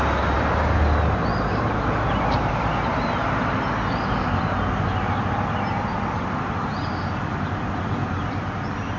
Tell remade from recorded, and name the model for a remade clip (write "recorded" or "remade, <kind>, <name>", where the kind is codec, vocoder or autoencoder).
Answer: recorded